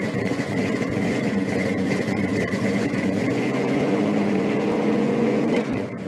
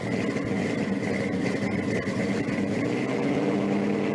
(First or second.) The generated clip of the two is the first